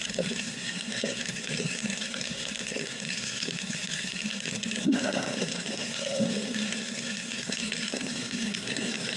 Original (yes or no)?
no